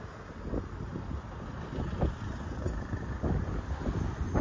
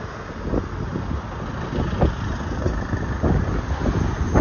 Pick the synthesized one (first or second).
first